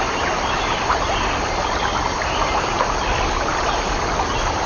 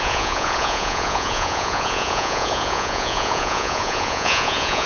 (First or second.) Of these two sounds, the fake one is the second